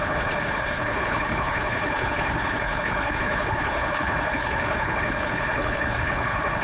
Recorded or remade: remade